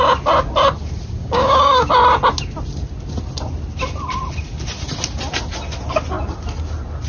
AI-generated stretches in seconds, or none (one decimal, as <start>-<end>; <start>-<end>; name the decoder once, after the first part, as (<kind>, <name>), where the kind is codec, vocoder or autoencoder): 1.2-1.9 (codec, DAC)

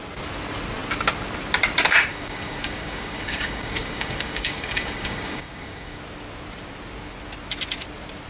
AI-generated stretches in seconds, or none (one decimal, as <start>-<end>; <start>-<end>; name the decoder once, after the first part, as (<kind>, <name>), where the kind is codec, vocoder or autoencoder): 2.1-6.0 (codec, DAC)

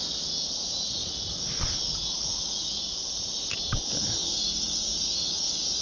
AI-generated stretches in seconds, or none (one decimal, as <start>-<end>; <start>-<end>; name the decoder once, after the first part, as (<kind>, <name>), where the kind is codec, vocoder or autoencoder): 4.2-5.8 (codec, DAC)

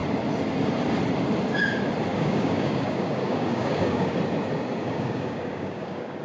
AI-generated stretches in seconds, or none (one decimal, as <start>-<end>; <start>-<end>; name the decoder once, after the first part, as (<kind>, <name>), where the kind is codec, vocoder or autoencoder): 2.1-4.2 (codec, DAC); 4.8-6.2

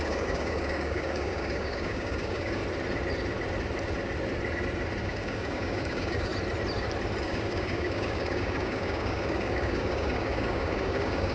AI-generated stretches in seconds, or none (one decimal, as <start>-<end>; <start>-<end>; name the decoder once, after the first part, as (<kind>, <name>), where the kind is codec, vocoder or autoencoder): 0.0-2.6 (codec, DAC); 5.0-6.3; 7.2-11.3